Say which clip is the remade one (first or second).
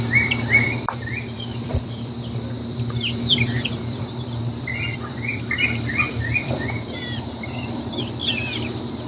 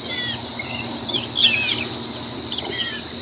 first